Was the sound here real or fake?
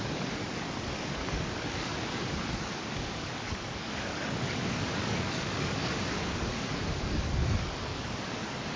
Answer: fake